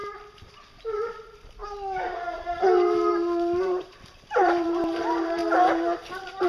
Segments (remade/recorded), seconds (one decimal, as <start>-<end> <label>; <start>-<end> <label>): 0.0-1.6 remade; 1.6-3.1 recorded; 3.1-6.5 remade